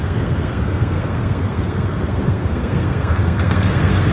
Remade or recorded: remade